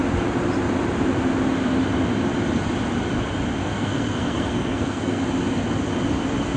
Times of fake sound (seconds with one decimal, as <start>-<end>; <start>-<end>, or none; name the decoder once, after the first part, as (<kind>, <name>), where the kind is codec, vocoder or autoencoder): 3.6-5.2 (codec, SNAC)